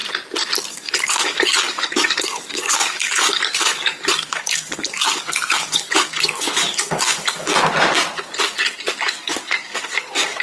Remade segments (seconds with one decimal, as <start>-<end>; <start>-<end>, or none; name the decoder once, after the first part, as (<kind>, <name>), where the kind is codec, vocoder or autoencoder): 0.7-7.5 (codec, DAC); 9.1-10.4